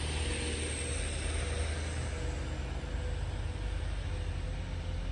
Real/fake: real